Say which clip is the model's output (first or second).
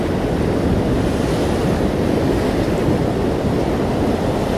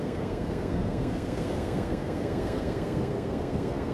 second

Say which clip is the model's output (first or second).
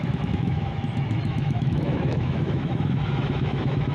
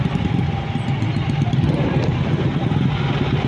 first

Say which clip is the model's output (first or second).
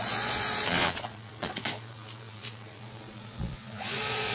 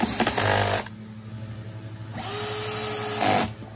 first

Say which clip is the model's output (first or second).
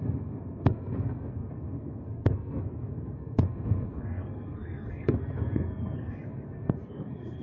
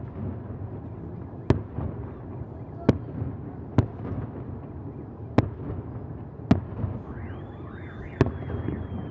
first